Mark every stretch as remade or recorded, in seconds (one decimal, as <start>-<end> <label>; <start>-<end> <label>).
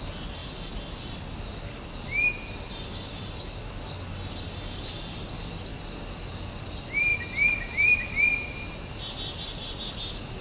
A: 0.0-10.4 recorded